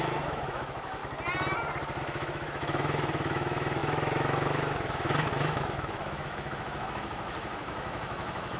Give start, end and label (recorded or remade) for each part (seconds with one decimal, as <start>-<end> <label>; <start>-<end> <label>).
0.0-1.0 remade; 1.0-2.0 recorded; 2.0-8.6 remade